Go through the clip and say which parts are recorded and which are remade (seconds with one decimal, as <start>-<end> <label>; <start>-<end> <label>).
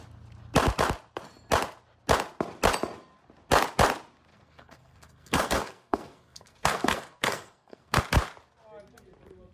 0.0-4.3 recorded; 4.3-8.0 remade; 8.0-9.5 recorded